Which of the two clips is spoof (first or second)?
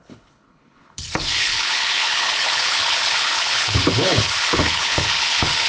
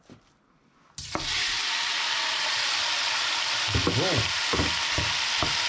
first